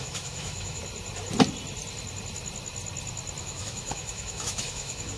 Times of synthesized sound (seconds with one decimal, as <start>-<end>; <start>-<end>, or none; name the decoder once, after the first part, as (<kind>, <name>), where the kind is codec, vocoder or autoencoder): 0.0-0.8 (autoencoder, DAC-VAE); 3.4-5.2